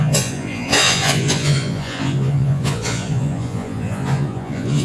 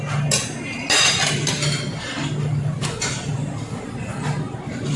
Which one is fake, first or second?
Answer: first